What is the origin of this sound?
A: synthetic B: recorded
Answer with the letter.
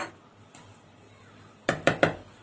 A